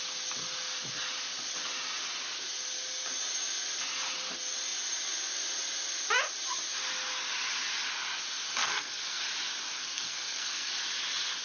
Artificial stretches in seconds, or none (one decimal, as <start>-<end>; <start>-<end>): 8.6-9.2; 9.8-10.7